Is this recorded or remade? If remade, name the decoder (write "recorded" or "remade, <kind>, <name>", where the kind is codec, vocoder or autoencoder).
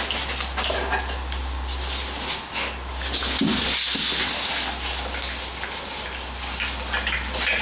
recorded